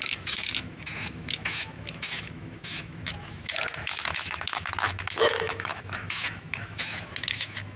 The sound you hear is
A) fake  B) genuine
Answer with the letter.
A